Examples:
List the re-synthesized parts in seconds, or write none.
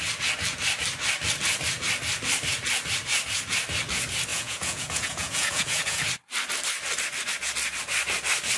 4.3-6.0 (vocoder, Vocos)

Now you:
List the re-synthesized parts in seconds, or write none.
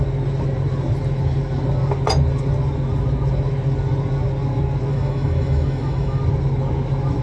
4.9-6.2 (autoencoder, DAC-VAE)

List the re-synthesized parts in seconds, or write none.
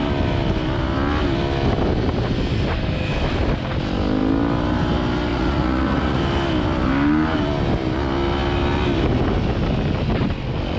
5.3-6.2 (vocoder, Vocos)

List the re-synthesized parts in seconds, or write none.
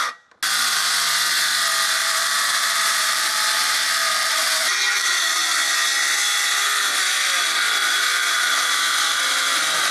2.0-5.4 (vocoder, BigVGAN v2); 7.8-8.8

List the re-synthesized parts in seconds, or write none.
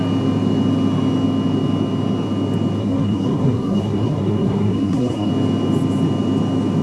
2.8-5.3 (codec, SNAC)